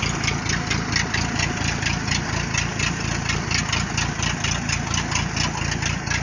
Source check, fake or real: real